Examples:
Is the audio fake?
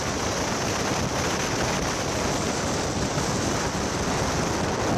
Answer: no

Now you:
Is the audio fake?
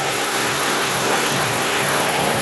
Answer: yes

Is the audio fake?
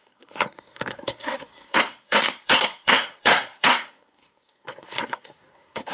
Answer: yes